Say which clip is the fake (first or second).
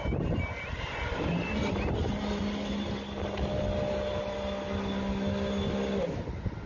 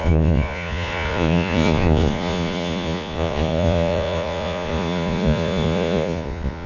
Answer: second